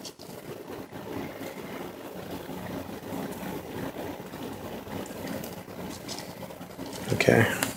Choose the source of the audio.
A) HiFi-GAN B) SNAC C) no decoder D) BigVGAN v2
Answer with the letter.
C